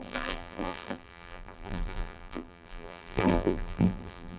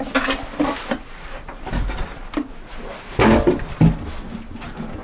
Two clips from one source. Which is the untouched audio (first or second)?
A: second